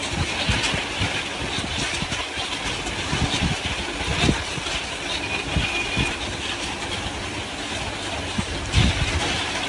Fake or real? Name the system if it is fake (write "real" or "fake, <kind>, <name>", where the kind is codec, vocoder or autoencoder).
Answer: real